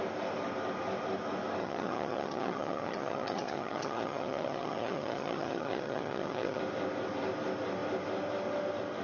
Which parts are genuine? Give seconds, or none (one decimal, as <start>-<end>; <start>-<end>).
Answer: 0.0-1.6; 6.6-9.0